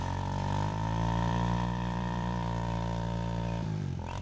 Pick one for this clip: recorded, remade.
remade